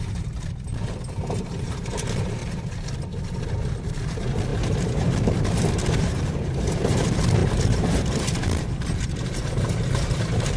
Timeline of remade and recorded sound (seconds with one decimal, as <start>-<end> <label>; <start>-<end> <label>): 0.0-2.4 remade; 2.4-3.8 recorded; 3.8-10.6 remade